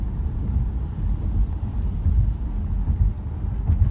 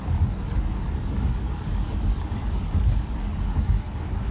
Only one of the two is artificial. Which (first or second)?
second